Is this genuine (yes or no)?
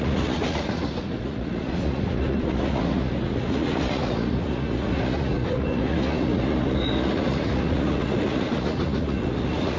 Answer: no